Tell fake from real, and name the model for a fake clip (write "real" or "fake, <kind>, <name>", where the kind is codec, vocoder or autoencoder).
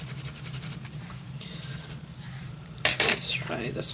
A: fake, vocoder, BigVGAN v2